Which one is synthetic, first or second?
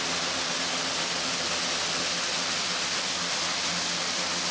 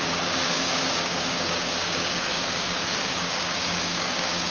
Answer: second